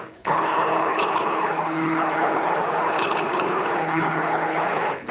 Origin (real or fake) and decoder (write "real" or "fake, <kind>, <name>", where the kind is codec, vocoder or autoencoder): fake, codec, HILCodec